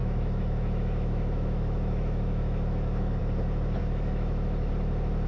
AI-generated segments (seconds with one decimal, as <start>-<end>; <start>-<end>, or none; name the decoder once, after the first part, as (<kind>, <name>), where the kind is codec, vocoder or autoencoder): 0.0-3.2 (autoencoder, DAC-VAE); 3.8-4.7